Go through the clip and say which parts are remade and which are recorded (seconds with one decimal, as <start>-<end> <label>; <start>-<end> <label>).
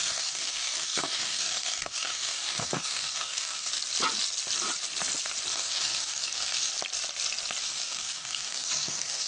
0.0-3.7 remade; 3.7-5.5 recorded; 5.5-6.7 remade; 6.7-7.6 recorded; 7.6-9.3 remade